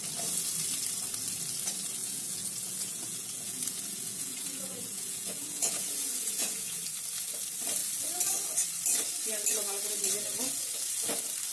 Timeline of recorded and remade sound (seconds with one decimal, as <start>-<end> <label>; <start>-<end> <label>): 0.0-2.0 recorded; 2.0-6.8 remade; 6.8-11.5 recorded